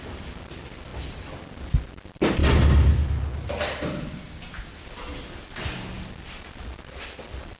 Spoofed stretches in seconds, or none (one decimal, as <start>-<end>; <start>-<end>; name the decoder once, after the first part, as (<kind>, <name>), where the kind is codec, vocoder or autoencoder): none